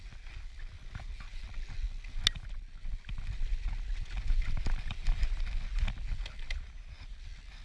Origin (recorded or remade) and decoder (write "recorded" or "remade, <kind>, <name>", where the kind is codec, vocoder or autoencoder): recorded